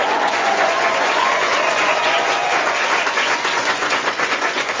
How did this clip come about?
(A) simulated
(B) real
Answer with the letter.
A